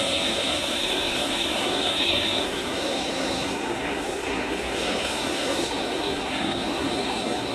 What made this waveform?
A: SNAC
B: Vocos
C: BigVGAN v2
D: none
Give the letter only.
A